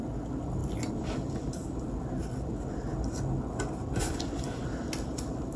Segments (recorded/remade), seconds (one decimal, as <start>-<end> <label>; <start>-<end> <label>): 0.0-5.6 recorded